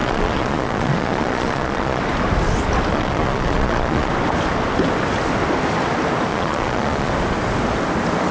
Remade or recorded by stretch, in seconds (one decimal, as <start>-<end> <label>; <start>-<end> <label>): 0.0-2.0 remade; 2.0-2.9 recorded; 2.9-4.1 remade; 4.1-6.3 recorded; 6.3-7.1 remade; 7.1-8.3 recorded